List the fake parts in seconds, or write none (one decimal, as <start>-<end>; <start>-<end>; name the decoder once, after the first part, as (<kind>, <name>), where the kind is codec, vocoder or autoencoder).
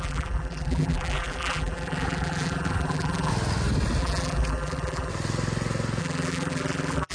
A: 0.0-3.3 (vocoder, BigVGAN v2); 4.0-5.1; 6.0-7.1